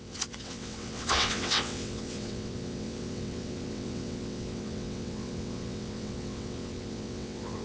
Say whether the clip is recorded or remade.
remade